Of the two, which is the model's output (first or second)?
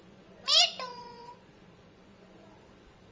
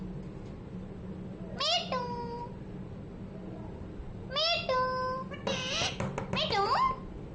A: first